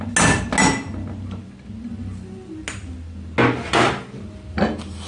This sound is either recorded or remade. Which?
recorded